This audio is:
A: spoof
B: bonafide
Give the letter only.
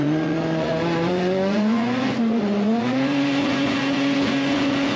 A